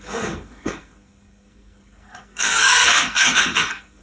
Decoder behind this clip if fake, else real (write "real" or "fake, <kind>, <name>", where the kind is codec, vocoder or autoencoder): fake, codec, SNAC